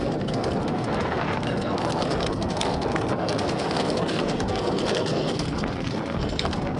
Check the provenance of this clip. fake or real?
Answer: fake